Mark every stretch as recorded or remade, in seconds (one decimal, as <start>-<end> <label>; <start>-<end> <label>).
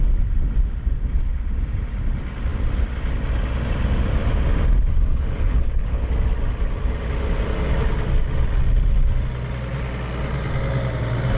0.0-5.1 recorded; 5.1-6.1 remade; 6.1-11.4 recorded